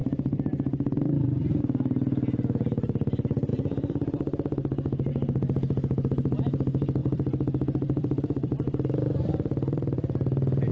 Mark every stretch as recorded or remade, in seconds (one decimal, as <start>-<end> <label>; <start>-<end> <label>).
0.0-1.6 remade; 1.6-3.5 recorded; 3.5-5.1 remade; 5.1-7.0 recorded; 7.0-10.7 remade